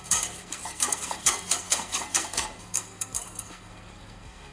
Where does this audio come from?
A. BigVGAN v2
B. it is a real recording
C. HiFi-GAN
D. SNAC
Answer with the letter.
D